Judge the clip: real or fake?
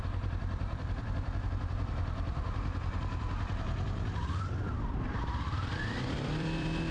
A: fake